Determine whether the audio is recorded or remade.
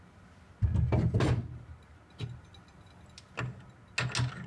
recorded